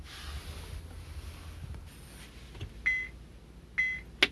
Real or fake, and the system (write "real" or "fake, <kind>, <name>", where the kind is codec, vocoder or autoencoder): real